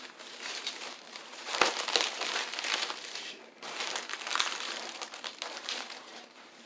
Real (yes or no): no